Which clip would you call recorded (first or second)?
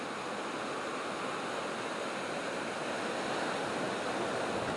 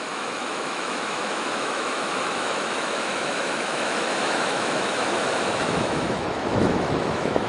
first